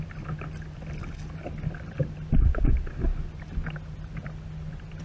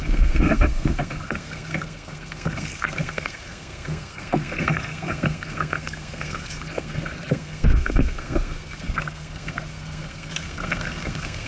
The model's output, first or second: second